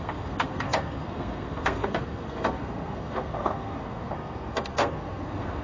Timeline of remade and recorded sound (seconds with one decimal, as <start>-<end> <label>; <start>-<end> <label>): 0.0-5.6 remade